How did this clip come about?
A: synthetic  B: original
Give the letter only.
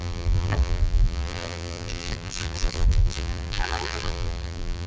A